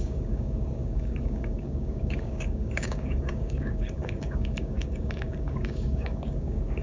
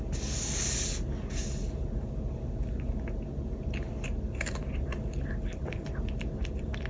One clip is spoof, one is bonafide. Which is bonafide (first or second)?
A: second